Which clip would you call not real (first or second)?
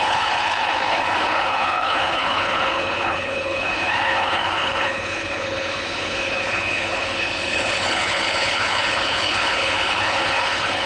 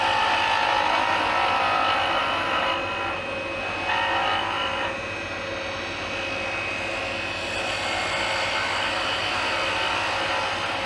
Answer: first